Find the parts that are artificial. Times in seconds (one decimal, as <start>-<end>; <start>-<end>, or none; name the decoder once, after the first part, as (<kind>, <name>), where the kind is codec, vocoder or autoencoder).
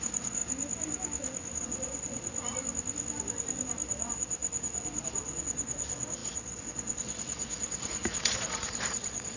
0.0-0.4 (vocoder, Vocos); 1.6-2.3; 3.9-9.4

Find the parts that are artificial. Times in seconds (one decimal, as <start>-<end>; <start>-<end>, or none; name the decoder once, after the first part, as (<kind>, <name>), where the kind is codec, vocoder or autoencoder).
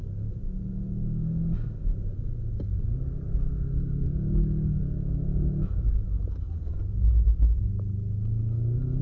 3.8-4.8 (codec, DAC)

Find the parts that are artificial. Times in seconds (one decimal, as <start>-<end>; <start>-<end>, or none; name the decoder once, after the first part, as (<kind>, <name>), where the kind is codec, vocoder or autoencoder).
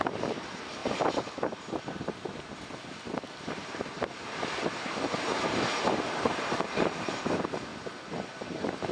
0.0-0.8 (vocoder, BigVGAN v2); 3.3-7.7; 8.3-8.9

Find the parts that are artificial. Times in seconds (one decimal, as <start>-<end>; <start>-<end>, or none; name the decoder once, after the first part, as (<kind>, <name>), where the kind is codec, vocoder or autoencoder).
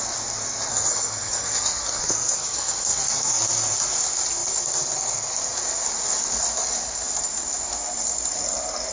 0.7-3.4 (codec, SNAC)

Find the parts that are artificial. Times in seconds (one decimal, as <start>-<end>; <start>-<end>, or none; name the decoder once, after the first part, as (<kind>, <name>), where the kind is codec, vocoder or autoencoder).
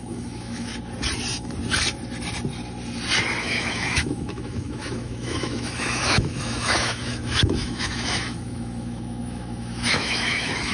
0.0-0.7 (autoencoder, DAC-VAE); 3.4-10.7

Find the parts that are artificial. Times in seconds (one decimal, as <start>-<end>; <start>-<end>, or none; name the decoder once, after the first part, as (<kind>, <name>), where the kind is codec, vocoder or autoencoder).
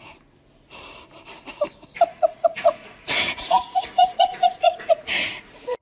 2.1-5.8 (vocoder, Vocos)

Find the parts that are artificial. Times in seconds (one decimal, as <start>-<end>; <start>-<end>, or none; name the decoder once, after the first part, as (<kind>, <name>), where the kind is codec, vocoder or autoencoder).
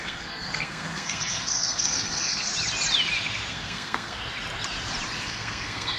0.0-2.5 (codec, SNAC); 3.5-4.2; 5.2-6.0